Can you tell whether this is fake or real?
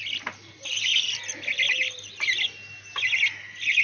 real